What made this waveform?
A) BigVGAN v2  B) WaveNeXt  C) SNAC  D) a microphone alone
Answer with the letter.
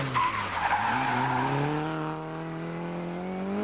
D